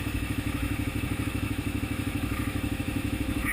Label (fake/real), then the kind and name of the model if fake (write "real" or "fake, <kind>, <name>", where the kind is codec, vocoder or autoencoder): fake, autoencoder, DAC-VAE